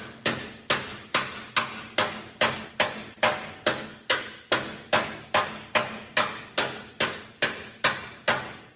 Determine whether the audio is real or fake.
real